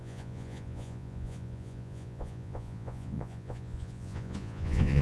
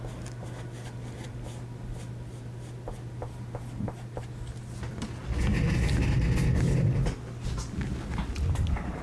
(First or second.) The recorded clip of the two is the second